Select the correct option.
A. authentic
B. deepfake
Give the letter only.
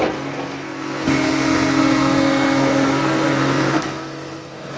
B